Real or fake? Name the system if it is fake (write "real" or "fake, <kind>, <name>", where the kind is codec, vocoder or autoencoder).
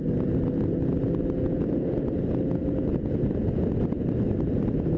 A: real